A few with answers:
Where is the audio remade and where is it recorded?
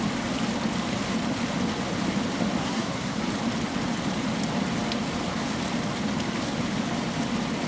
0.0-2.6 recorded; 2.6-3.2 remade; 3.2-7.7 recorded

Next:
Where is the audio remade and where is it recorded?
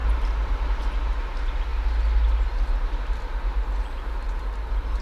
0.0-0.8 remade; 0.8-5.0 recorded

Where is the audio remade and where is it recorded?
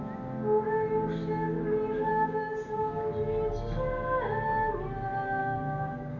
0.0-2.1 recorded; 2.1-3.0 remade; 3.0-5.4 recorded; 5.4-6.2 remade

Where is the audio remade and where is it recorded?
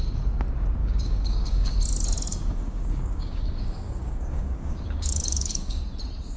0.0-0.8 recorded; 0.8-1.8 remade; 1.8-2.3 recorded; 2.3-5.8 remade; 5.8-6.4 recorded